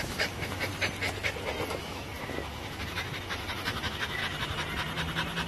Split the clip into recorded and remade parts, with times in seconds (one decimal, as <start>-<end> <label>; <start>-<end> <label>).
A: 0.0-0.7 remade; 0.7-1.7 recorded; 1.7-4.2 remade; 4.2-5.5 recorded